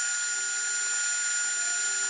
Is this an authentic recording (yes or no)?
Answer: yes